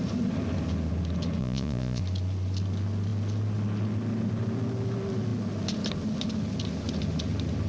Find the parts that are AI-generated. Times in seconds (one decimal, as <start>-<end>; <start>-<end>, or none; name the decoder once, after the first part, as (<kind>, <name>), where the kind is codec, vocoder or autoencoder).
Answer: 1.4-2.0 (vocoder, Vocos)